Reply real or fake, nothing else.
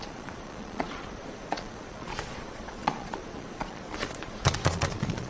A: fake